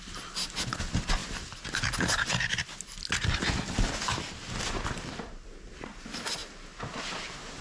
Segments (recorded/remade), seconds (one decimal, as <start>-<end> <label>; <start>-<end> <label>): 0.0-7.6 recorded

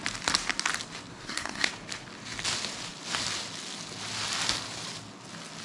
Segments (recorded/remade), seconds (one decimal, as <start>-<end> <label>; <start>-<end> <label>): 0.0-1.1 recorded; 1.1-1.7 remade; 1.7-5.6 recorded

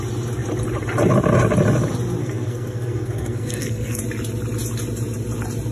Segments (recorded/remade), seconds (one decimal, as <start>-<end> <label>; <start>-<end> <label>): 0.0-2.2 recorded; 2.2-4.0 remade; 4.0-5.7 recorded